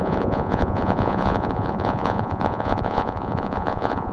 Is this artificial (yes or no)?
yes